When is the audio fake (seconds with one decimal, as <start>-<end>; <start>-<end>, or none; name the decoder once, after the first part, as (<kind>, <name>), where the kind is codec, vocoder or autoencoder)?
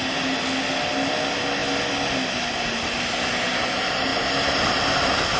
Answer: none